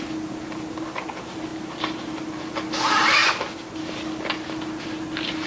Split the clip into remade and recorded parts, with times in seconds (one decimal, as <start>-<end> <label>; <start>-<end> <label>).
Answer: 0.0-5.5 recorded